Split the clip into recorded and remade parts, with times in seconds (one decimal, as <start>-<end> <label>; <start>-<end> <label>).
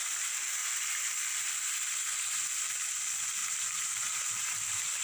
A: 0.0-3.4 recorded; 3.4-5.0 remade